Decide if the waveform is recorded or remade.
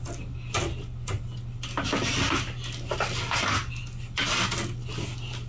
recorded